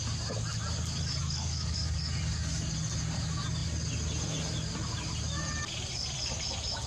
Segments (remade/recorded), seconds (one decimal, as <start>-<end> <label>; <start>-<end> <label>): 0.0-1.2 recorded; 1.2-2.0 remade; 2.0-6.9 recorded